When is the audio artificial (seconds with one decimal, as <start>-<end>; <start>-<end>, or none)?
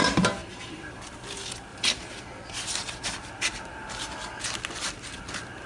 0.4-1.0; 1.7-4.4